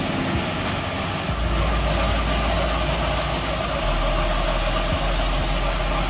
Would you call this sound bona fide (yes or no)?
yes